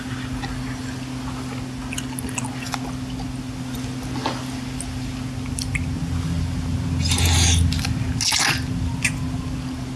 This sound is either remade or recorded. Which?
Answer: recorded